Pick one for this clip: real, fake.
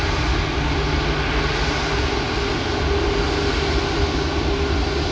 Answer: real